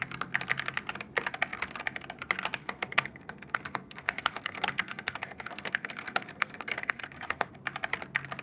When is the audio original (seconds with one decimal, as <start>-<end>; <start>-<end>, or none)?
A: 0.0-2.6; 7.5-8.4